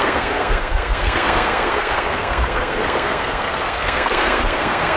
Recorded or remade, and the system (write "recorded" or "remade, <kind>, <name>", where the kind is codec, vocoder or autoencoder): remade, codec, SNAC